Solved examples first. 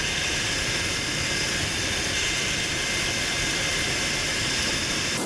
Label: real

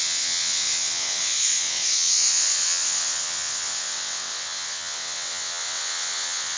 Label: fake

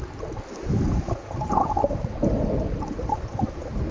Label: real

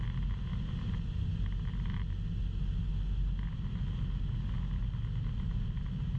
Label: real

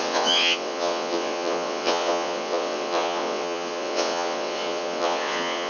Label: fake